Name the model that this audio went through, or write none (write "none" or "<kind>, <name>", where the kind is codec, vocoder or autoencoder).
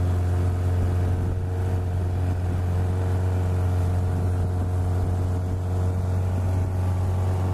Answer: none